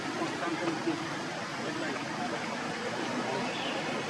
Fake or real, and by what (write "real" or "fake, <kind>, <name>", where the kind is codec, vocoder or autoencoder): real